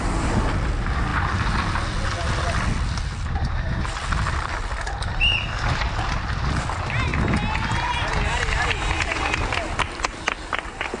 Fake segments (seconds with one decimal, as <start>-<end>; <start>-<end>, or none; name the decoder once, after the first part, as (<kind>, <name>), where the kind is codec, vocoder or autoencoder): none